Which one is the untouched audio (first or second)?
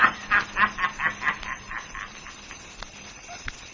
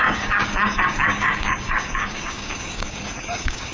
first